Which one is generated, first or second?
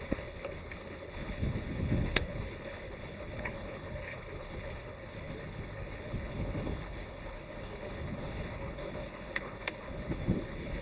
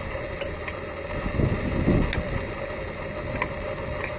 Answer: first